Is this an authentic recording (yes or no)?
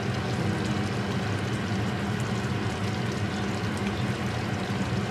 yes